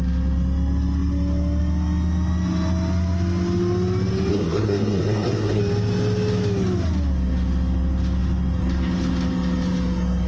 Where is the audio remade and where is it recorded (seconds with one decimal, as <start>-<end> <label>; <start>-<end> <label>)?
0.0-4.3 recorded; 4.3-5.6 remade; 5.6-10.3 recorded